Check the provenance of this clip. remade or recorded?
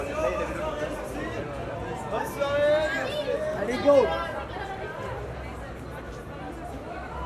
recorded